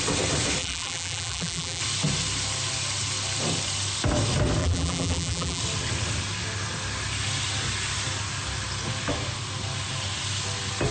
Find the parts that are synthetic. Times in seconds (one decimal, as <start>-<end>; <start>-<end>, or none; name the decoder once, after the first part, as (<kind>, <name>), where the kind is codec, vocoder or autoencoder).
0.6-1.8 (vocoder, BigVGAN v2); 4.6-5.6